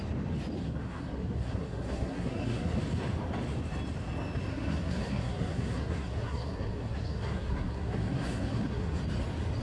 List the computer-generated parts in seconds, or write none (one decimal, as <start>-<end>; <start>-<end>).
0.6-2.8; 4.5-9.0